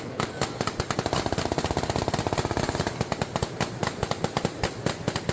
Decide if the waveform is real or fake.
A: real